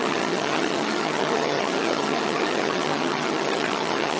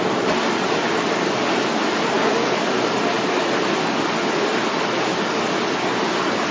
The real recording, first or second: second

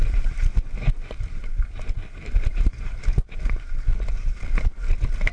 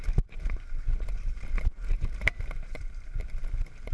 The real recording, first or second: first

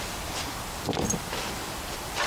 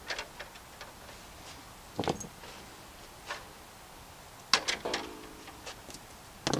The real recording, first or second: second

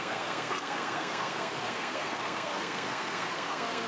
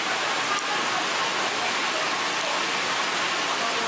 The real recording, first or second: second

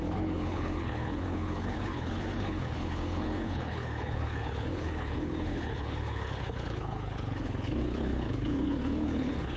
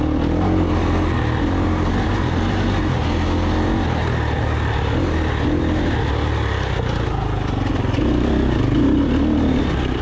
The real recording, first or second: second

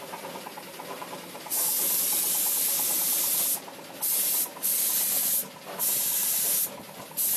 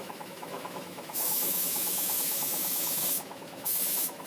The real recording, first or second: first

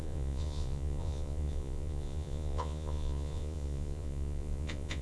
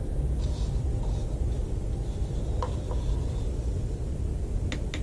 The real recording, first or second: second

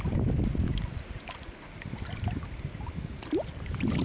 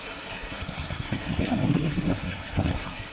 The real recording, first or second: first